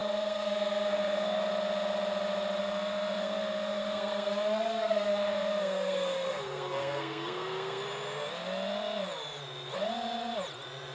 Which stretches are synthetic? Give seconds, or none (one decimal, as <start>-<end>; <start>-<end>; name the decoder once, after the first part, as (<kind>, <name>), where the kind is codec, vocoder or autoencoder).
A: 0.0-1.4 (codec, SNAC); 2.6-7.8